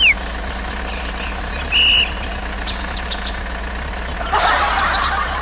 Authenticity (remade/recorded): recorded